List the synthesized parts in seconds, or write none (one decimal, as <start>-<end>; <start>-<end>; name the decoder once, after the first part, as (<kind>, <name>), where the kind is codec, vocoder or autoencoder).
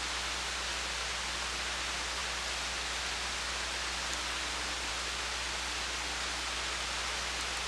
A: none